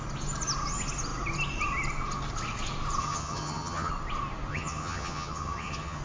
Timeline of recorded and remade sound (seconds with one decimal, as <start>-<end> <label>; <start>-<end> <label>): 0.0-3.0 recorded; 3.0-3.9 remade; 3.9-4.5 recorded; 4.5-6.0 remade

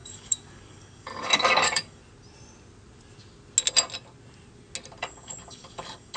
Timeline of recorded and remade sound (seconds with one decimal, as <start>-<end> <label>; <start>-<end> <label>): 0.0-2.0 remade; 2.0-5.0 recorded; 5.0-6.2 remade

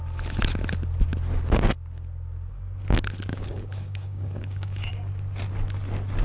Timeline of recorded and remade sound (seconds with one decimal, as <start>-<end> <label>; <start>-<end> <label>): 0.0-3.3 recorded; 3.3-4.9 remade; 4.9-6.2 recorded

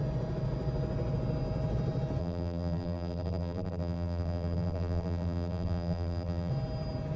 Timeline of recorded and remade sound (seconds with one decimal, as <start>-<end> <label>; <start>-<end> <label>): 0.0-2.2 recorded; 2.2-6.5 remade; 6.5-7.2 recorded

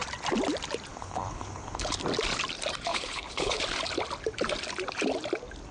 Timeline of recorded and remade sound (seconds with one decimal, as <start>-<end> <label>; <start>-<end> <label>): 0.0-0.9 recorded; 0.9-2.0 remade; 2.0-2.9 recorded; 2.9-3.6 remade; 3.6-5.7 recorded

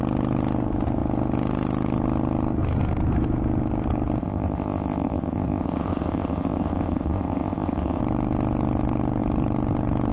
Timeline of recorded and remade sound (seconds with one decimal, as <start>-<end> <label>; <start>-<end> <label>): 0.0-4.2 recorded; 4.2-8.0 remade; 8.0-10.1 recorded

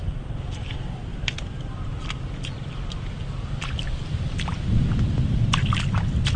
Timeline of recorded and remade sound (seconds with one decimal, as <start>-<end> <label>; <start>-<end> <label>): 0.0-6.4 recorded